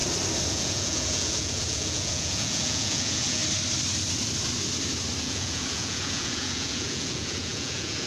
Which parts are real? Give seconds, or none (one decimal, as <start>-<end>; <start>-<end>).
0.0-0.5; 3.4-5.2